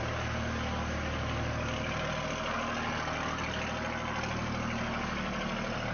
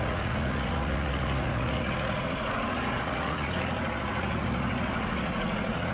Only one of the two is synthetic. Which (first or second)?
second